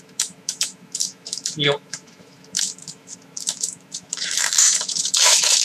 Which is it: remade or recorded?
remade